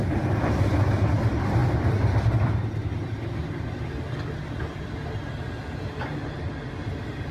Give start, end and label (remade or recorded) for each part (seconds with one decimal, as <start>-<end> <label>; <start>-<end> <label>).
0.0-7.3 recorded